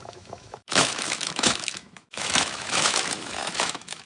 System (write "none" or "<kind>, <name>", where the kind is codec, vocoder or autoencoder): autoencoder, DAC-VAE